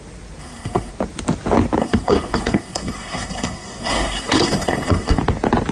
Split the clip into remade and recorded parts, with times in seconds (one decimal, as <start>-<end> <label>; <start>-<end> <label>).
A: 0.0-0.4 recorded; 0.4-0.9 remade; 0.9-1.8 recorded; 1.8-5.2 remade; 5.2-5.7 recorded